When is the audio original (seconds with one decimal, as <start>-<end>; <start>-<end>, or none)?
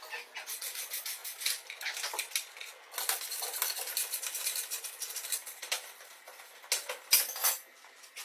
0.0-8.2